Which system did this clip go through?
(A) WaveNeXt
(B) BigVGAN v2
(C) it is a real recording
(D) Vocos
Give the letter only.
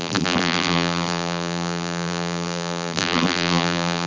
B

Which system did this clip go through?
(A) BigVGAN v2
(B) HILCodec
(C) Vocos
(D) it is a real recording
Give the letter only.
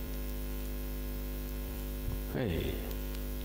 A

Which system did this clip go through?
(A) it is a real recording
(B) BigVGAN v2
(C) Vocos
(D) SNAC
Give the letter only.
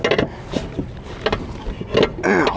A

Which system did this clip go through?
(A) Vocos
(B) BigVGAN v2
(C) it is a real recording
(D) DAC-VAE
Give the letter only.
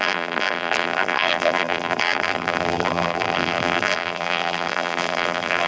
B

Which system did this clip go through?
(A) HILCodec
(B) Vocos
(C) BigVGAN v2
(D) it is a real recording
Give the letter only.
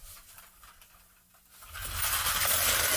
D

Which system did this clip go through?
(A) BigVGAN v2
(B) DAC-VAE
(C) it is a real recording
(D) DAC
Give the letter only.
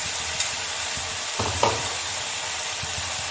A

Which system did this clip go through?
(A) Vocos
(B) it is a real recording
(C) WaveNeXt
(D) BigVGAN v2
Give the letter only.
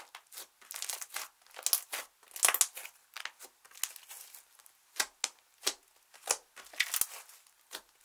B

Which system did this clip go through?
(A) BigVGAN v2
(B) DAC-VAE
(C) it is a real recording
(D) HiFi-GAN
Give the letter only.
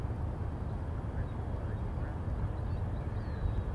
C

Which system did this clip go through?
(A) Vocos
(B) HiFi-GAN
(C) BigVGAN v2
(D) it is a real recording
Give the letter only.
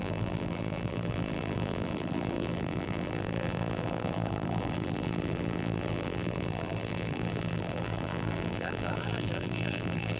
C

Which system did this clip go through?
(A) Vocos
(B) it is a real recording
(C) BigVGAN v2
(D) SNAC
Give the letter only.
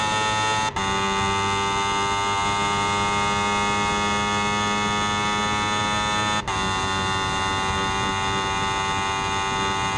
B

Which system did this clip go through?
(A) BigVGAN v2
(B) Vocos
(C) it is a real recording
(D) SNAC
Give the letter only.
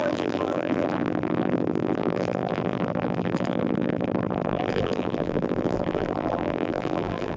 A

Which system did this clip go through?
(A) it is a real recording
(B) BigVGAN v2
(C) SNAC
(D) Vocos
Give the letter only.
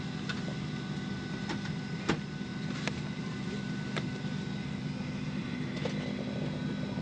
A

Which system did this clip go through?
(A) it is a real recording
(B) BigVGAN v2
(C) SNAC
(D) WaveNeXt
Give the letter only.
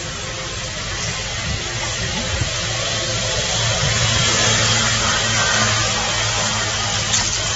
A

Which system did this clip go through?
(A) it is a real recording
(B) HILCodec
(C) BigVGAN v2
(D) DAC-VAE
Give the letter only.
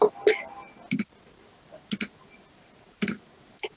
A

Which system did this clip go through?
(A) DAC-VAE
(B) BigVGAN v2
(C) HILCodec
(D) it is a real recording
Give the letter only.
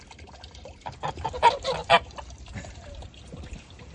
B